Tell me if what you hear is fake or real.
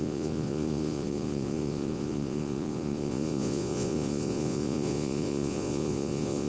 fake